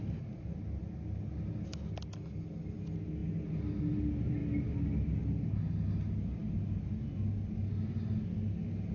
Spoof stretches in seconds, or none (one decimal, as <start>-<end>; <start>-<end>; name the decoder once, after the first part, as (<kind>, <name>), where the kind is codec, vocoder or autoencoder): 0.0-0.8 (vocoder, BigVGAN v2)